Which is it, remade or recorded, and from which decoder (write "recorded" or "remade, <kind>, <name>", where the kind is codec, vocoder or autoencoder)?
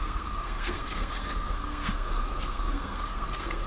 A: remade, codec, SNAC